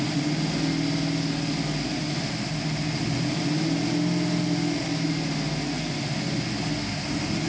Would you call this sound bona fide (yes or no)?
yes